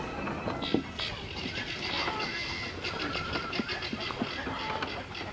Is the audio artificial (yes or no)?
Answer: no